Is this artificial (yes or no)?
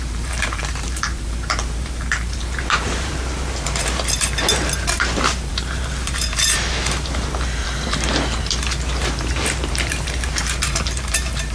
yes